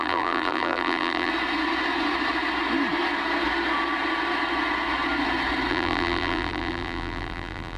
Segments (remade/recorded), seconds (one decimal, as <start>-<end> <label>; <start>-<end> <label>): 0.0-1.3 remade; 1.3-5.7 recorded; 5.7-7.8 remade